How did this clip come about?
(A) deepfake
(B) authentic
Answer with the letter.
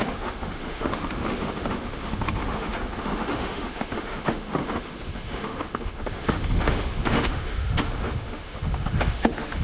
A